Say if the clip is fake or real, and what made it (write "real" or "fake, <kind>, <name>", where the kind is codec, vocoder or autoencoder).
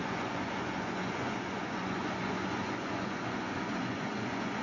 fake, vocoder, Vocos